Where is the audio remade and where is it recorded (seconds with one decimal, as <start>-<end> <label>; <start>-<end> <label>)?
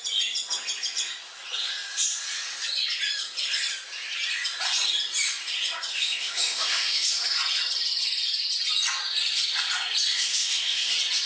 0.0-5.9 recorded; 5.9-7.1 remade; 7.1-10.1 recorded; 10.1-10.9 remade; 10.9-11.3 recorded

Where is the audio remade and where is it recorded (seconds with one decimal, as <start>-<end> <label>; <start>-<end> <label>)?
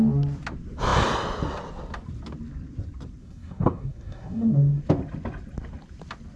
0.0-3.2 recorded; 3.2-4.8 remade; 4.8-6.4 recorded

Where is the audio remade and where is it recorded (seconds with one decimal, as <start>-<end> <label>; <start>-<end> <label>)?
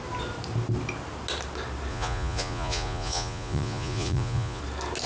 0.0-1.9 recorded; 1.9-4.6 remade; 4.6-5.1 recorded